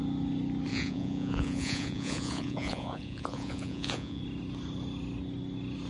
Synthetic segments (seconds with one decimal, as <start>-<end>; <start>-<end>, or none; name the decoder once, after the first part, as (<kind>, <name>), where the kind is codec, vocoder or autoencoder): 0.7-4.2 (vocoder, Vocos)